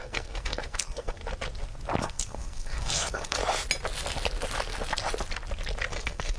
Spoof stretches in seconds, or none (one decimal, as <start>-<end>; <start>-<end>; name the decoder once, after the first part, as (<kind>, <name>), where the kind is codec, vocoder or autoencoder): 0.0-1.2 (codec, SNAC); 2.0-3.4; 5.9-6.4